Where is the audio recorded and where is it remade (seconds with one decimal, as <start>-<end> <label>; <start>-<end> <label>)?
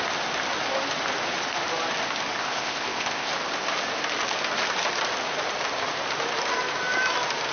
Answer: 0.0-2.4 recorded; 2.4-3.3 remade; 3.3-7.5 recorded